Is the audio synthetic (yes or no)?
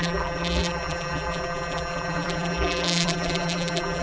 yes